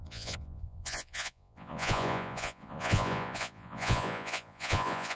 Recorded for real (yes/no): no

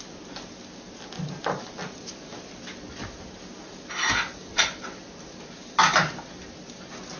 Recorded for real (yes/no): yes